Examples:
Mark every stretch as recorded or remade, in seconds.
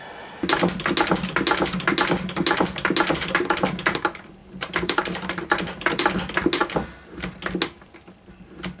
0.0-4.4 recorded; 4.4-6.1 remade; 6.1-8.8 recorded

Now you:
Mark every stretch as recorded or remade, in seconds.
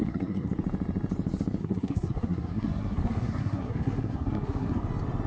0.0-0.5 remade; 0.5-1.6 recorded; 1.6-4.8 remade; 4.8-5.3 recorded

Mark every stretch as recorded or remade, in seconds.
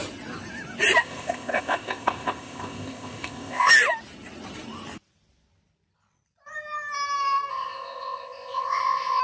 0.0-1.0 recorded; 1.0-3.7 remade; 3.7-7.5 recorded; 7.5-9.2 remade